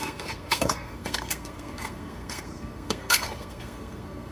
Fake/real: fake